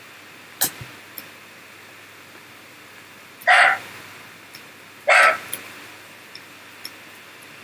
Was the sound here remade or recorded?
recorded